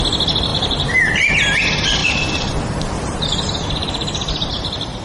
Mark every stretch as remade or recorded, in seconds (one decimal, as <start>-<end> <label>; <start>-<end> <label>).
0.0-0.5 recorded; 0.5-1.3 remade; 1.3-2.0 recorded; 2.0-5.0 remade